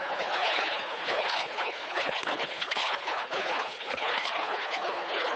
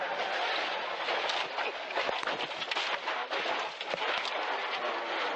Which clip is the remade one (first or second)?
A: first